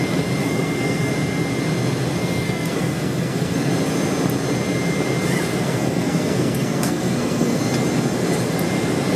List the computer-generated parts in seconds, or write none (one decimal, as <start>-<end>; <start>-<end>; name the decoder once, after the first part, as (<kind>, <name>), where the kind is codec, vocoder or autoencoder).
0.4-1.1 (codec, SNAC); 2.2-3.7; 5.5-7.6